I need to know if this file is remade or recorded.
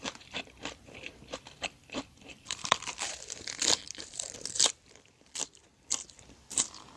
remade